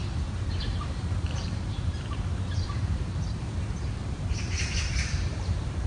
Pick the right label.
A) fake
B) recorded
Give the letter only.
A